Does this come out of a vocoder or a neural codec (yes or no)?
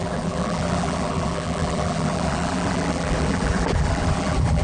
yes